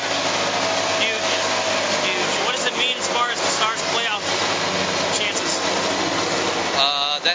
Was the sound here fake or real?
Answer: real